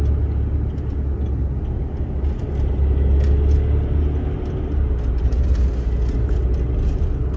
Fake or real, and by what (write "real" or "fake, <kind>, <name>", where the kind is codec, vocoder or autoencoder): real